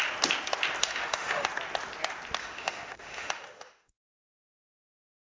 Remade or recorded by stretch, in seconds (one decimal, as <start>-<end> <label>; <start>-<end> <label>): 0.0-0.8 recorded; 0.8-1.5 remade; 1.5-2.4 recorded; 2.4-4.1 remade; 4.1-5.4 recorded